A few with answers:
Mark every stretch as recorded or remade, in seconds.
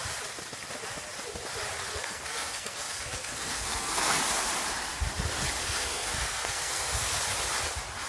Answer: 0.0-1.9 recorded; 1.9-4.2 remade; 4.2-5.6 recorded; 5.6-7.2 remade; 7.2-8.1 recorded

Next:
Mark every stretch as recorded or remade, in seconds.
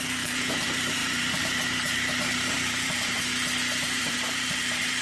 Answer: 0.0-3.3 remade; 3.3-4.0 recorded; 4.0-5.0 remade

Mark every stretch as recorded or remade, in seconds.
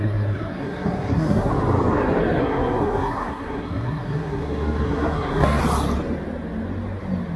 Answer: 0.0-1.5 remade; 1.5-2.4 recorded; 2.4-5.6 remade; 5.6-7.4 recorded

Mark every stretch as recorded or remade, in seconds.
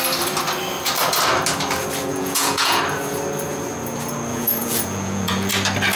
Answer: 0.0-2.1 recorded; 2.1-2.8 remade; 2.8-4.3 recorded; 4.3-5.5 remade; 5.5-6.0 recorded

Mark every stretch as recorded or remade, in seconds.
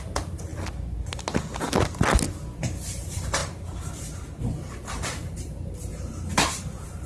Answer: 0.0-0.5 remade; 0.5-2.3 recorded; 2.3-3.4 remade; 3.4-4.4 recorded; 4.4-5.9 remade; 5.9-6.5 recorded; 6.5-7.1 remade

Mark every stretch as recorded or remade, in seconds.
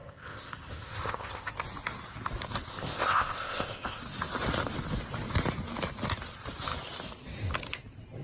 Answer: 0.0-1.5 remade; 1.5-2.7 recorded; 2.7-4.0 remade; 4.0-8.2 recorded